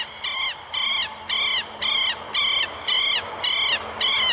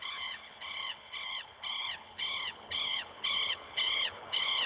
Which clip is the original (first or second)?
first